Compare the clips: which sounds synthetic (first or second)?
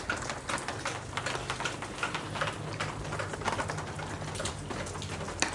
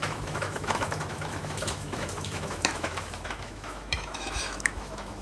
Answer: second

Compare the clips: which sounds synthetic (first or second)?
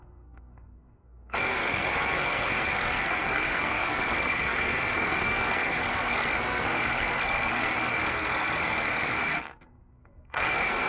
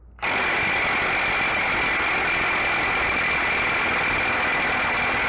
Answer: first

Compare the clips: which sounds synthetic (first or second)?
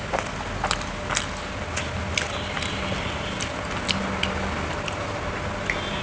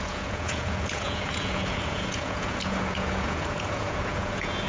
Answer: second